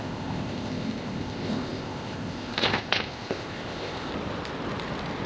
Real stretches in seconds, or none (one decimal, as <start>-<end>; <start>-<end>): 4.1-5.3